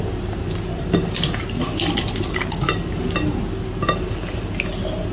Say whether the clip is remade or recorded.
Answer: recorded